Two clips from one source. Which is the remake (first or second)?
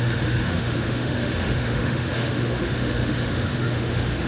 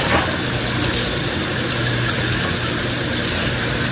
first